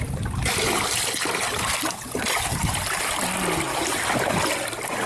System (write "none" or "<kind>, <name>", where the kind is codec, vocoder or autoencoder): none